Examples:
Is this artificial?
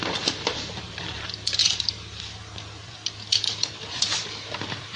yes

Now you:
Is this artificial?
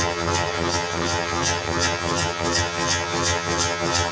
yes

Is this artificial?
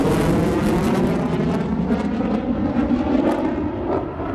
no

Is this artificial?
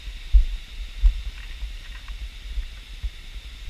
no